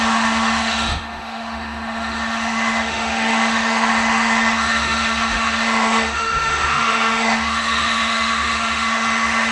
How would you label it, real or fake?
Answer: fake